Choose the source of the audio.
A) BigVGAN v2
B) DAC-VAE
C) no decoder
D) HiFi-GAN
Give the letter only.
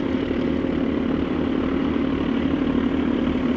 C